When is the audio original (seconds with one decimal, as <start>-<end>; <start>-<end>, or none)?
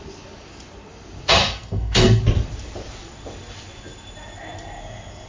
0.0-1.4; 2.2-5.3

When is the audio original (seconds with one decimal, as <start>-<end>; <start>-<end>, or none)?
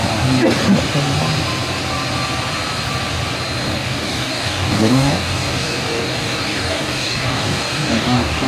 0.0-3.6